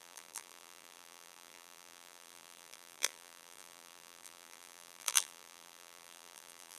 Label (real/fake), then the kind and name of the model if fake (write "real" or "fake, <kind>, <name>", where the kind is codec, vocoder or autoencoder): fake, vocoder, BigVGAN v2